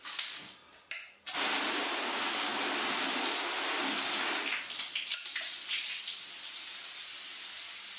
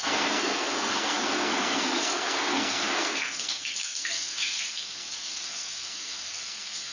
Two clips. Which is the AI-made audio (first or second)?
second